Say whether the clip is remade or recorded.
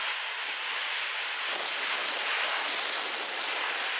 recorded